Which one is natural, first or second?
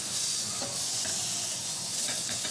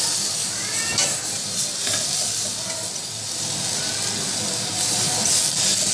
second